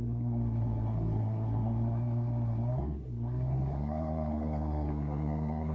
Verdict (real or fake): fake